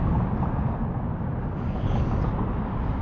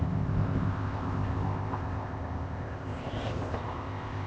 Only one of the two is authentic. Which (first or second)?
first